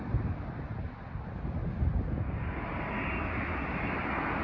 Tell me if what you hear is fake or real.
real